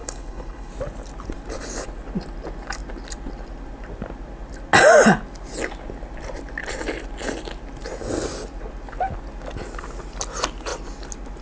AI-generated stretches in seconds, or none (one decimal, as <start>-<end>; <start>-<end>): 0.0-0.7